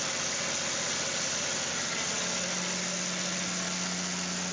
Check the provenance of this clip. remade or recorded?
recorded